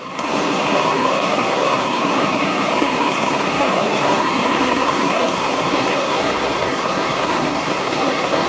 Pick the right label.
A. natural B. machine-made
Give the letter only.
B